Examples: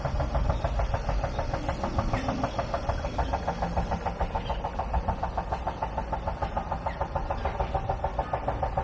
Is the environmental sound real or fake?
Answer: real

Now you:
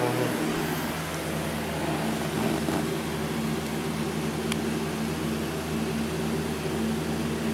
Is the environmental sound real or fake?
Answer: real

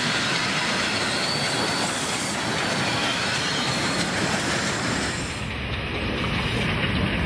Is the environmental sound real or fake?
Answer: real